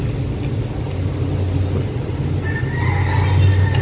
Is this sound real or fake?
real